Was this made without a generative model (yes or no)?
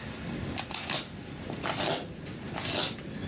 yes